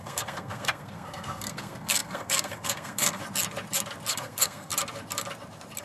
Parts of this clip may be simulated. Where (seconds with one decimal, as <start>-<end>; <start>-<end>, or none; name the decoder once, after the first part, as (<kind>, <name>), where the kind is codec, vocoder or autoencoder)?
0.0-3.2 (codec, SNAC); 4.1-4.7